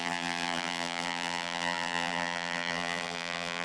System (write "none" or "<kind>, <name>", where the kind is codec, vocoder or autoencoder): vocoder, BigVGAN v2